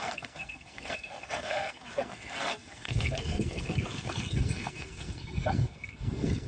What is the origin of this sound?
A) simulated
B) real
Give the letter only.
A